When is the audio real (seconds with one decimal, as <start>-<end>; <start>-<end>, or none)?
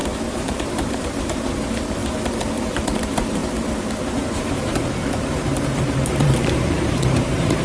2.0-2.5; 3.4-4.0